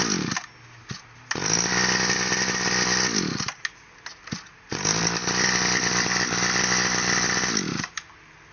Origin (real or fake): real